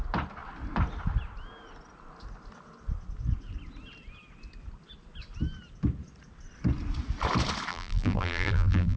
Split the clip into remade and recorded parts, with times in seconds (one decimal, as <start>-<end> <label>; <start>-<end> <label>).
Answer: 0.0-7.7 recorded; 7.7-9.0 remade